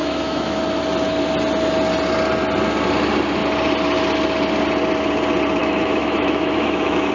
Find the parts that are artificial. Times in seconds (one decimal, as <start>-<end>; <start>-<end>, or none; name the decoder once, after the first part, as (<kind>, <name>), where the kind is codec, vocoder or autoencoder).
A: 0.0-0.6 (autoencoder, DAC-VAE); 5.6-7.1